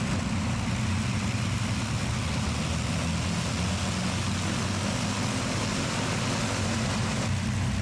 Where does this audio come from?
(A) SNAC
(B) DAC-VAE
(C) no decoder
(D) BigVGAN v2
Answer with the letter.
C